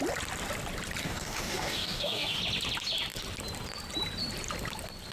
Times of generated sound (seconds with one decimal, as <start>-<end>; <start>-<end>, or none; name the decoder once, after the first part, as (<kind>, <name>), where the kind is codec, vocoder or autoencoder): 1.0-2.4 (codec, DAC)